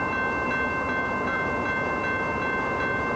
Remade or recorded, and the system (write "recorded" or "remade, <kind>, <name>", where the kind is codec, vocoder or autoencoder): recorded